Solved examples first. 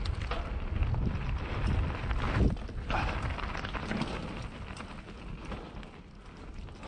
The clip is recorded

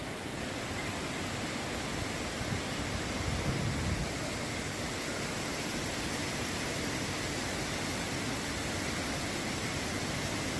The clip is recorded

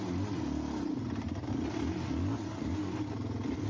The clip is recorded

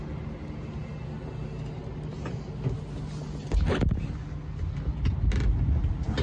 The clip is recorded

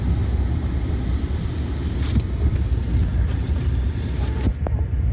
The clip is recorded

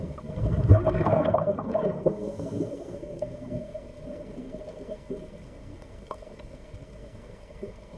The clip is remade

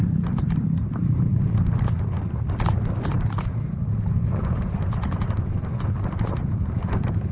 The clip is recorded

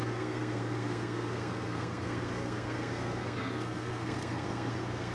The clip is remade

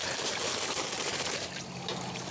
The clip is recorded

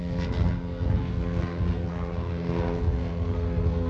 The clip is remade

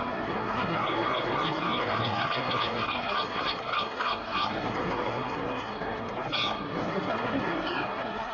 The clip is remade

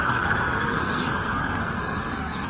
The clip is remade